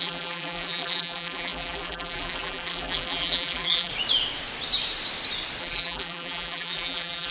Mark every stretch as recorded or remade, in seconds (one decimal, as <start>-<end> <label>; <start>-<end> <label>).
0.0-3.9 remade; 3.9-5.6 recorded; 5.6-7.3 remade